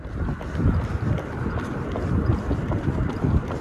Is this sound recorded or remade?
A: remade